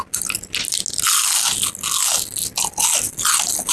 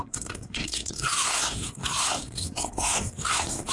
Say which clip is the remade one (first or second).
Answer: second